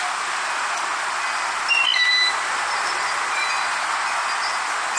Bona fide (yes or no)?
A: yes